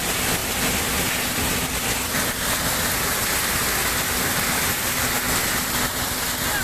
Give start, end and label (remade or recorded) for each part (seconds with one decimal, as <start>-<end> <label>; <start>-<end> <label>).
0.0-6.6 recorded